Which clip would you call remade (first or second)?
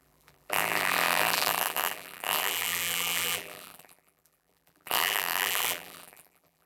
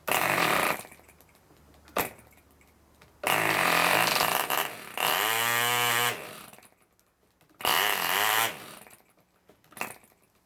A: first